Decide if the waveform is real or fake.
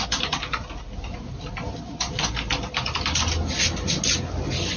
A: real